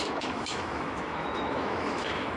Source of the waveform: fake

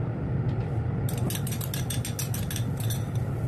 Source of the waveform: real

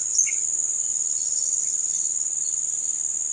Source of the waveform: real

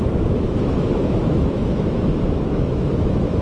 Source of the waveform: fake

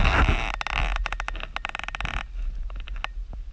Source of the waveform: real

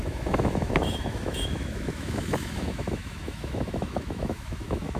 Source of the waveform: fake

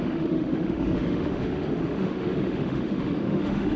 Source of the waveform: fake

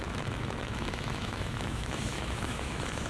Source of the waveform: fake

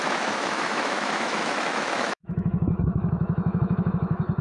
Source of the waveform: fake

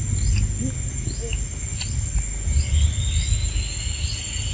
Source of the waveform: real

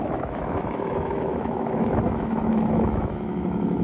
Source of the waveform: fake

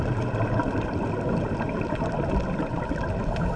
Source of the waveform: real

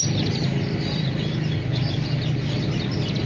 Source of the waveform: real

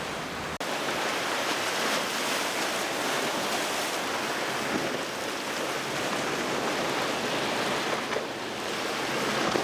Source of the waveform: real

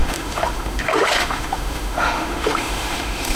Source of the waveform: fake